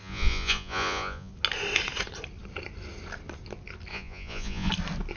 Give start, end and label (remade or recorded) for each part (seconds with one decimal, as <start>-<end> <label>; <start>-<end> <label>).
0.0-1.3 remade; 1.3-3.9 recorded; 3.9-4.7 remade; 4.7-5.2 recorded